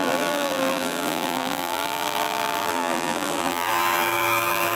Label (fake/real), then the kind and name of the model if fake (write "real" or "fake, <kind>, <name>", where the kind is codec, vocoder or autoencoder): fake, vocoder, BigVGAN v2